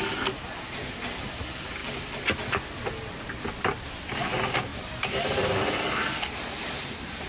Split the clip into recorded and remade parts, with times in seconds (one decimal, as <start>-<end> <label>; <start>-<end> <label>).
0.0-7.3 recorded